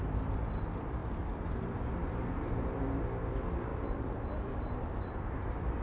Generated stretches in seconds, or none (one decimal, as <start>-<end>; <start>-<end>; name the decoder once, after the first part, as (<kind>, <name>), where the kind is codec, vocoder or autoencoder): 1.0-2.5 (vocoder, BigVGAN v2); 3.7-5.8